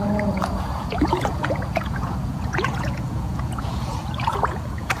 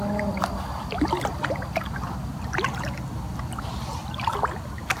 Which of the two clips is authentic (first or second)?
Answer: second